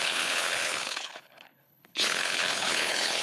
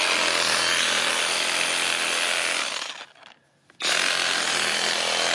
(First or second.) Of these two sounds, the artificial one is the first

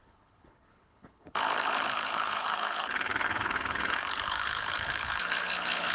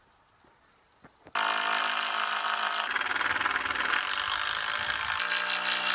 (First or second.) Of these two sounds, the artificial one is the first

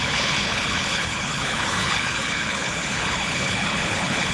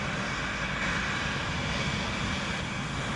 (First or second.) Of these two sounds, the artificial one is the first